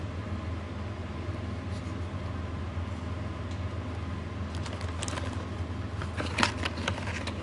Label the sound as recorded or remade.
recorded